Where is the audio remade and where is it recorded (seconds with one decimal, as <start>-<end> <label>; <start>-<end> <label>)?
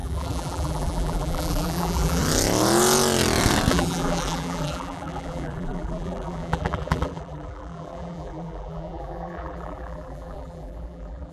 0.0-2.2 remade; 2.2-3.7 recorded; 3.7-11.3 remade